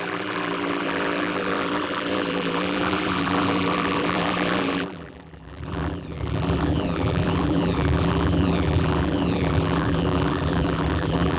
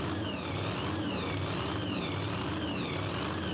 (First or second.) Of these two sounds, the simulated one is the first